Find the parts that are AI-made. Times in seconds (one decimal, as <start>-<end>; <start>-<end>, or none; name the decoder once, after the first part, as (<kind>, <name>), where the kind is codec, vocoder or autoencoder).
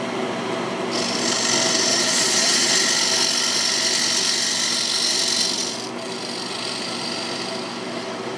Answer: 1.9-2.7 (vocoder, Vocos)